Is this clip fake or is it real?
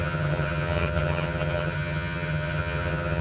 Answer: fake